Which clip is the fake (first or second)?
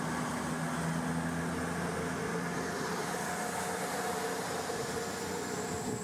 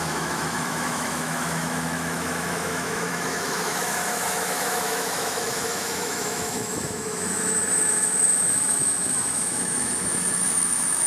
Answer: second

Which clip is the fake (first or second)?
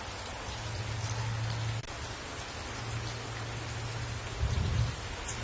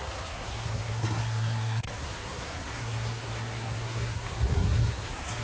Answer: second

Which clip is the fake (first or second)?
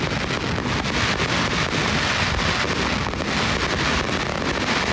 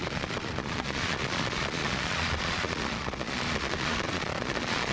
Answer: second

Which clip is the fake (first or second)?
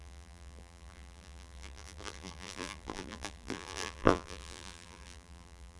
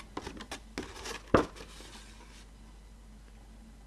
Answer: first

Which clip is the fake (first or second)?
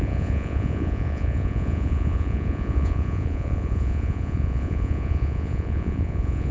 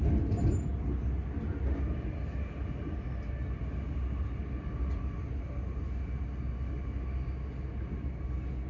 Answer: first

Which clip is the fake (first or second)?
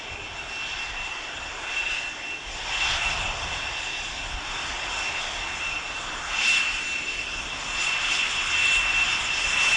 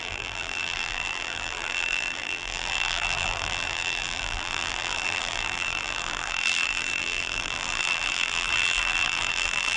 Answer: second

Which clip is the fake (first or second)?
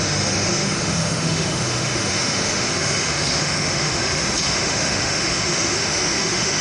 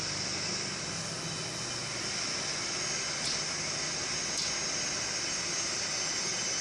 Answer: first